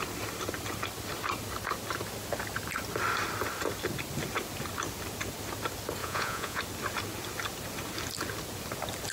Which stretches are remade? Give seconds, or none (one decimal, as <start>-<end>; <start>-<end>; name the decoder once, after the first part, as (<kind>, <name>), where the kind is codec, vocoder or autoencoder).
6.0-6.6 (vocoder, Vocos)